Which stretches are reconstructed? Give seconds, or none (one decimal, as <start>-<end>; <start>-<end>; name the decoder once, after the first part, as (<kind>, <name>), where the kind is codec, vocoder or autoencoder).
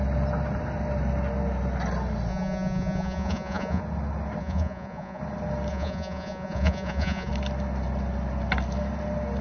2.3-3.8 (vocoder, Vocos); 4.4-5.2; 5.7-7.3